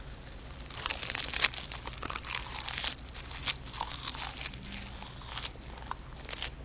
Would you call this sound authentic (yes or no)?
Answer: yes